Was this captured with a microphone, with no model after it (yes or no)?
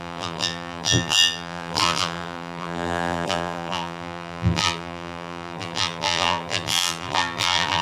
no